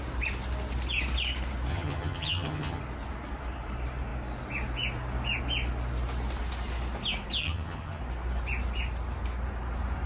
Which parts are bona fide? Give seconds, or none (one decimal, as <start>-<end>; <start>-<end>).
0.0-1.7; 2.8-7.4; 8.0-10.1